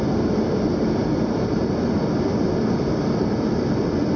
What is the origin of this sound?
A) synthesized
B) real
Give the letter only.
B